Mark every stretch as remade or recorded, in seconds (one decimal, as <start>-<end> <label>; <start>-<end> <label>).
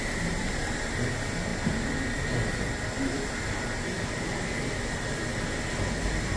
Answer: 0.0-5.3 remade; 5.3-6.4 recorded